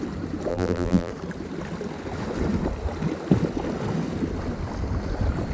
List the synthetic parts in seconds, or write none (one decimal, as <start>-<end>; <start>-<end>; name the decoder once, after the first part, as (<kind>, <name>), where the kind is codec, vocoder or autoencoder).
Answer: 0.5-1.1 (vocoder, BigVGAN v2)

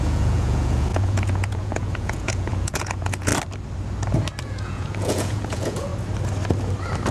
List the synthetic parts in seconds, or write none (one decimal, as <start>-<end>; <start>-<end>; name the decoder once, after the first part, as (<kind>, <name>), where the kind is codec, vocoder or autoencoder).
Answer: 0.0-3.3 (vocoder, Vocos); 4.4-5.9

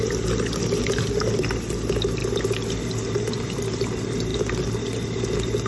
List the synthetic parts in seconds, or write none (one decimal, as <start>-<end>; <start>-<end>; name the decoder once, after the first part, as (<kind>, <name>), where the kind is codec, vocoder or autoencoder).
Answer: none